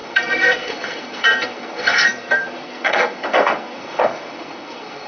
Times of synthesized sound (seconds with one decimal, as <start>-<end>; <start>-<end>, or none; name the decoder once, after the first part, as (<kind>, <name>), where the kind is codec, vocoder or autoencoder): 0.0-5.1 (codec, SNAC)